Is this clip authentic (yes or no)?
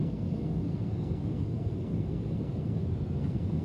no